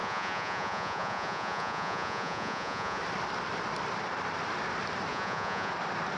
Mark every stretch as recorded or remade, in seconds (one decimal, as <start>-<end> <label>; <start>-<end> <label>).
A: 0.0-3.0 remade; 3.0-5.1 recorded; 5.1-5.7 remade; 5.7-6.2 recorded